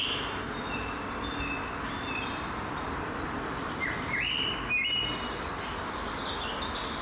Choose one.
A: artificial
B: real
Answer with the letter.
B